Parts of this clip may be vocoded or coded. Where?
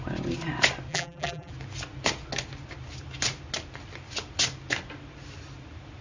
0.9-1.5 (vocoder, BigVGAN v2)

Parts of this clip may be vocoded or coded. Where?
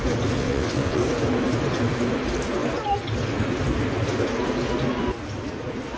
0.4-1.0 (vocoder, WaveNeXt)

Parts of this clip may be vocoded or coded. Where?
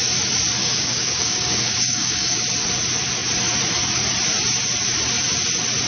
0.6-2.4 (codec, DAC)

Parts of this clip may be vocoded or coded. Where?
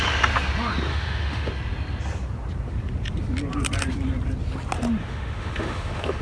0.9-1.5 (autoencoder, DAC-VAE); 5.0-6.2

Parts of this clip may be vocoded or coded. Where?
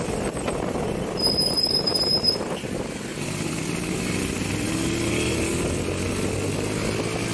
none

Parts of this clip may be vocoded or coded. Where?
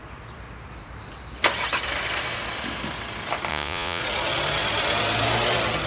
3.5-4.0 (vocoder, Vocos)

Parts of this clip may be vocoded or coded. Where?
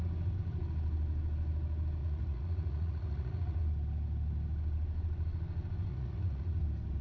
2.0-3.6 (vocoder, Vocos); 5.9-6.6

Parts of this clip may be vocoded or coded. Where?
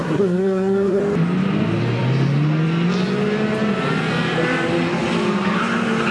0.0-1.0 (codec, SNAC)